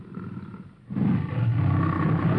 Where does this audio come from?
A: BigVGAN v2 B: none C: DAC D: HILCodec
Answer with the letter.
B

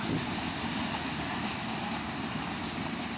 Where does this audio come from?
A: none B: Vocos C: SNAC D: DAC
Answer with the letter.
A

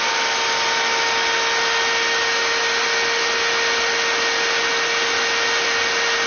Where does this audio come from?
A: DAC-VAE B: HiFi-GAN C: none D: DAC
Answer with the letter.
C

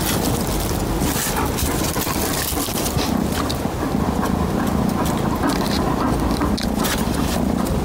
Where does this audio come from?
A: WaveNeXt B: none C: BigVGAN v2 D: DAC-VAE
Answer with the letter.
B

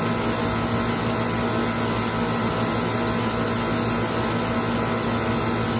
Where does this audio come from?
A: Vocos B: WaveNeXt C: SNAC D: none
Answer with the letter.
D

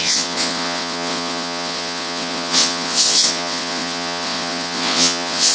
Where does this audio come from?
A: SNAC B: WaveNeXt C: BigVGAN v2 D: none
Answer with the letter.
B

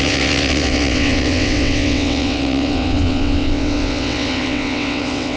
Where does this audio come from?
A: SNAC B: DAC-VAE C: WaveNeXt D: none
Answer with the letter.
C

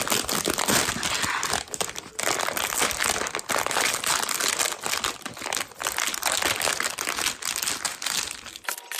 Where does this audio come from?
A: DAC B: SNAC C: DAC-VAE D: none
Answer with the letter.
D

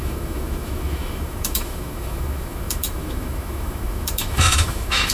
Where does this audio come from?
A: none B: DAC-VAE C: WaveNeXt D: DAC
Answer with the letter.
B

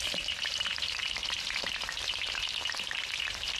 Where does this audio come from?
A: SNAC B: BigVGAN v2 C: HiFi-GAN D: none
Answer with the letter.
B